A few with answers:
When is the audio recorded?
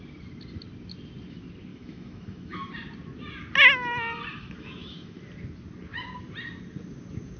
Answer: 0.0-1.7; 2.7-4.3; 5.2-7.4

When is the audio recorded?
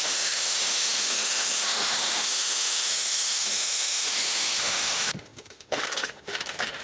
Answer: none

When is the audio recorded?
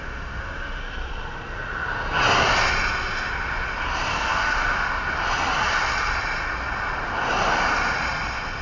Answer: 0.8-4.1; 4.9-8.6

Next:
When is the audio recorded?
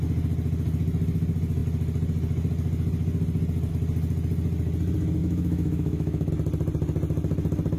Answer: 0.0-5.2; 6.3-7.8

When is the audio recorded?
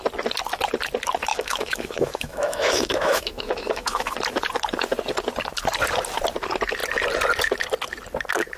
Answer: 0.0-1.3; 4.1-8.6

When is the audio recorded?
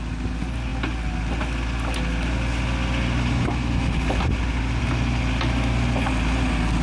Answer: 0.0-6.8